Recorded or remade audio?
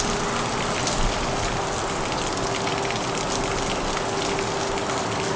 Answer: recorded